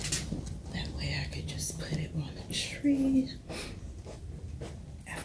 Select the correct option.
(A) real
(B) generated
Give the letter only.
A